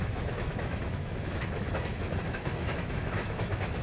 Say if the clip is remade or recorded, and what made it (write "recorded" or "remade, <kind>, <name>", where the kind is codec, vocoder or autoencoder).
remade, autoencoder, DAC-VAE